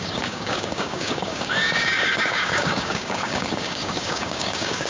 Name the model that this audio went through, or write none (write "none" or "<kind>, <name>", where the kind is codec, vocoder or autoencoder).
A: codec, DAC